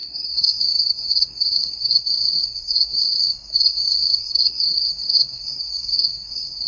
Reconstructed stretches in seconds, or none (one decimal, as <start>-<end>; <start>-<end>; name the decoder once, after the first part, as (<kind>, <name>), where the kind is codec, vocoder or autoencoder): 0.0-6.7 (codec, SNAC)